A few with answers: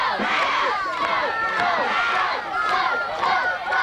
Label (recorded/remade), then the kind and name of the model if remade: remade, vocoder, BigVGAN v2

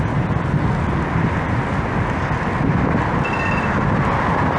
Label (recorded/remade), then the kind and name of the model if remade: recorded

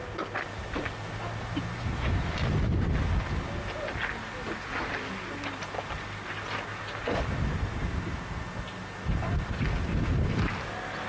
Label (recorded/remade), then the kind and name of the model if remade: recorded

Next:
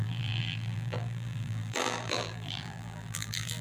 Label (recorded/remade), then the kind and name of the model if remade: remade, vocoder, BigVGAN v2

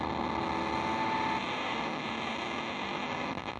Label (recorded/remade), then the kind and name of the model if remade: recorded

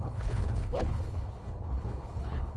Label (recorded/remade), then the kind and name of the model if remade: remade, codec, HILCodec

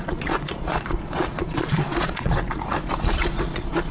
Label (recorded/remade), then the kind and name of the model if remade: remade, vocoder, Vocos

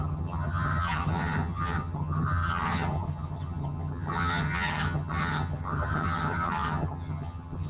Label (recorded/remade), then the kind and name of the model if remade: remade, vocoder, HiFi-GAN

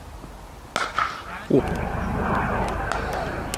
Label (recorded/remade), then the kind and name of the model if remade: recorded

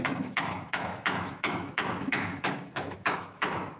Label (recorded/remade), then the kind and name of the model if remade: remade, autoencoder, DAC-VAE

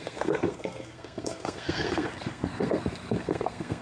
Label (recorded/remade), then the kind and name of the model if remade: remade, codec, SNAC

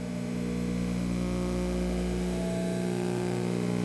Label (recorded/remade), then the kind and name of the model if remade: remade, autoencoder, DAC-VAE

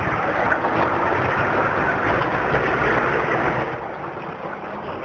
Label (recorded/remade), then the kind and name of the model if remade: recorded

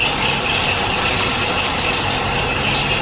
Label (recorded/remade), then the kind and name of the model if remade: recorded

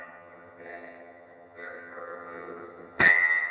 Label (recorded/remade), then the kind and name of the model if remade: remade, vocoder, HiFi-GAN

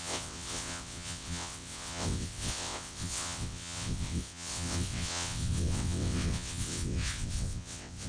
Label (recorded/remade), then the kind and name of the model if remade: remade, vocoder, WaveNeXt